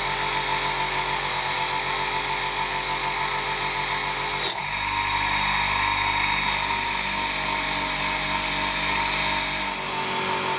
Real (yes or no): yes